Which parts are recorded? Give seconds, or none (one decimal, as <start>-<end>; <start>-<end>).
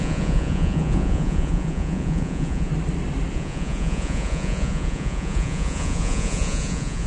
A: 2.7-3.3